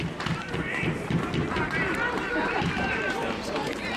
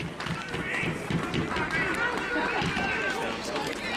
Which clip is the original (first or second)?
second